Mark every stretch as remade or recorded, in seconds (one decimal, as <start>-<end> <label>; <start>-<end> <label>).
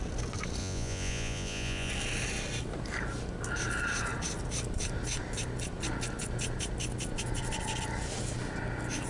0.0-0.6 recorded; 0.6-1.9 remade; 1.9-9.1 recorded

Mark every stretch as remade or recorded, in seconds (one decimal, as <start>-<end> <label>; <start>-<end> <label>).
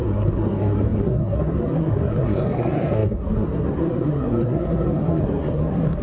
0.0-6.0 remade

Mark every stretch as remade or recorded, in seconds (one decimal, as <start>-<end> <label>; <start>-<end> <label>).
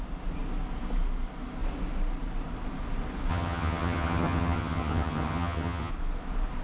0.0-3.3 recorded; 3.3-5.9 remade; 5.9-6.6 recorded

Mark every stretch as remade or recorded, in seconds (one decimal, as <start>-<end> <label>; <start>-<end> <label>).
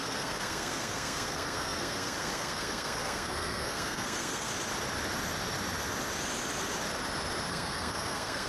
0.0-4.5 remade; 4.5-7.5 recorded; 7.5-8.5 remade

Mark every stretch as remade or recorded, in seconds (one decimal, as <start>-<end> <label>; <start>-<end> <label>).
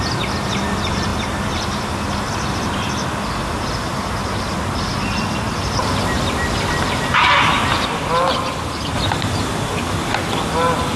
0.0-11.0 recorded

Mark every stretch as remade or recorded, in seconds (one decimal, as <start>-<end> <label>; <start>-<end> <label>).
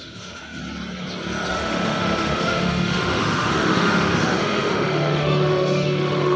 0.0-0.6 remade; 0.6-1.5 recorded; 1.5-6.4 remade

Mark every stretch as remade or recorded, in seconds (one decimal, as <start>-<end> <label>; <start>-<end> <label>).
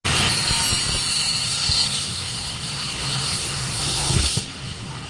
0.0-1.1 recorded; 1.1-5.1 remade